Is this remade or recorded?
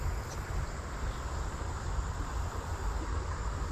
recorded